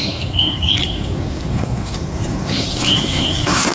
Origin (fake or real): fake